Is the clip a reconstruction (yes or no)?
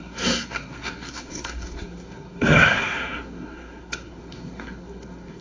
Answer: yes